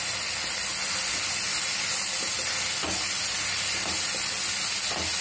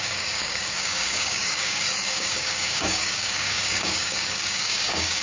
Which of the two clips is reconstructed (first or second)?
second